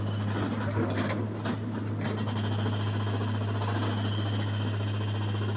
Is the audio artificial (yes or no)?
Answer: no